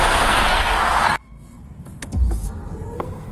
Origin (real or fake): fake